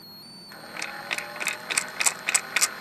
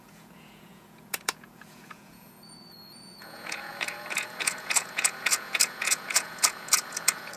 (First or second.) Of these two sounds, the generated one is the second